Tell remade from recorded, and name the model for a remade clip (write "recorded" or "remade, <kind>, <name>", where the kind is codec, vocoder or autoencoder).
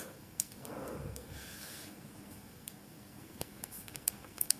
remade, codec, SNAC